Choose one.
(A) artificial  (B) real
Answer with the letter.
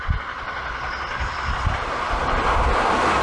B